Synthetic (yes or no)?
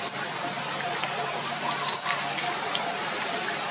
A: no